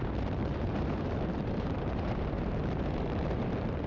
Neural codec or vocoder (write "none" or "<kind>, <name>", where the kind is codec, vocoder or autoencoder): vocoder, BigVGAN v2